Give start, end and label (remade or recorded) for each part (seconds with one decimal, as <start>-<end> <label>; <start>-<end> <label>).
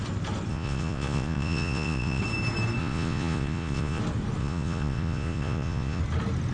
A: 0.0-0.5 recorded; 0.5-2.2 remade; 2.2-2.8 recorded; 2.8-4.0 remade; 4.0-4.4 recorded; 4.4-6.0 remade; 6.0-6.5 recorded